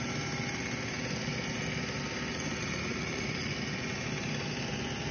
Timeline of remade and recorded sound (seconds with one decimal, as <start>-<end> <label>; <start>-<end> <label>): 0.0-2.3 recorded; 2.3-3.5 remade; 3.5-5.1 recorded